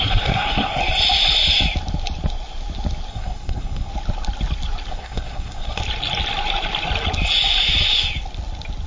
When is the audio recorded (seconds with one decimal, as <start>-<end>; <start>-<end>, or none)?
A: 0.8-3.1; 3.9-4.9; 5.8-8.9